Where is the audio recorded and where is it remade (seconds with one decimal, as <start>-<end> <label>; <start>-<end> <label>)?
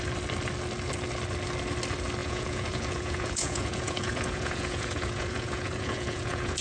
0.0-2.2 recorded; 2.2-6.6 remade